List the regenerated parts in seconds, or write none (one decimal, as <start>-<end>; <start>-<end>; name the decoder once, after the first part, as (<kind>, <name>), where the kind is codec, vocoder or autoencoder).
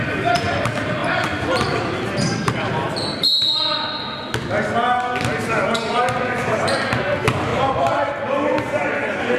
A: 1.0-2.7 (vocoder, BigVGAN v2); 7.5-8.1